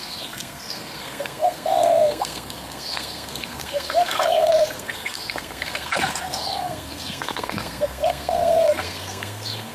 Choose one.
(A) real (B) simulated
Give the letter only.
B